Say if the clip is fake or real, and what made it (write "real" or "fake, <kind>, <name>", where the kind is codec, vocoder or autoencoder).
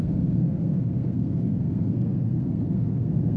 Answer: fake, codec, SNAC